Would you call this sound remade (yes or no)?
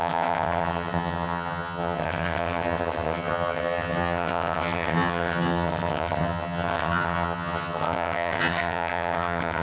yes